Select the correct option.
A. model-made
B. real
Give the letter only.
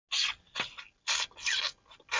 B